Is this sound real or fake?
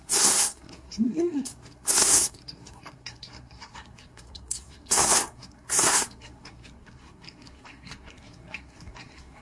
fake